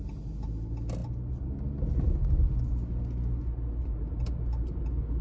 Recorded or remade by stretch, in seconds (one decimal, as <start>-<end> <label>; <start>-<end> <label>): 0.0-5.2 recorded